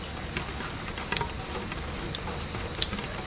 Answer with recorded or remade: recorded